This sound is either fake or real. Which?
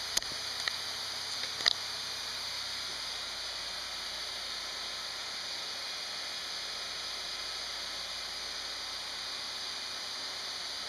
real